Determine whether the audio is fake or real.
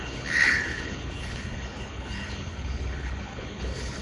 fake